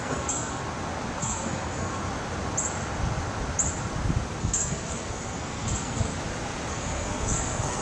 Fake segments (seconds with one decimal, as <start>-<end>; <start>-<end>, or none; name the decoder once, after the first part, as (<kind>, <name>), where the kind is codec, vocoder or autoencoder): 0.0-0.6 (codec, SNAC); 1.2-2.0; 4.4-6.1; 6.7-7.8